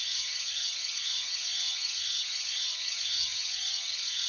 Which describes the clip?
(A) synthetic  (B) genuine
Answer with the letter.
A